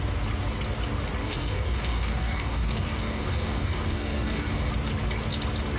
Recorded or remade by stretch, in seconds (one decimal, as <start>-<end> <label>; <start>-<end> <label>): 0.0-1.2 recorded; 1.2-4.7 remade; 4.7-5.8 recorded